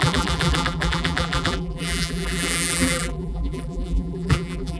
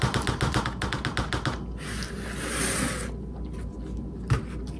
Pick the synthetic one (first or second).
first